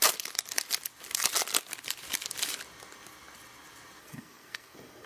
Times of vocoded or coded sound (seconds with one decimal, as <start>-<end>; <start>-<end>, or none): 4.0-5.1